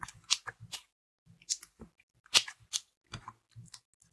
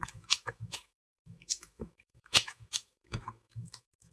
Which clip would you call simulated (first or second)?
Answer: second